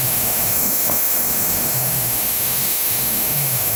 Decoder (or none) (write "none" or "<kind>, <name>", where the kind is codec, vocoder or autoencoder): autoencoder, DAC-VAE